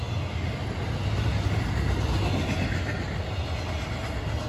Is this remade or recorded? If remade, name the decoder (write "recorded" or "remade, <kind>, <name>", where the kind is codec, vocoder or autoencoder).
recorded